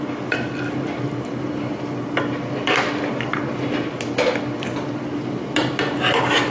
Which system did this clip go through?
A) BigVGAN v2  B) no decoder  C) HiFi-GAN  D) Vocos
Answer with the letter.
B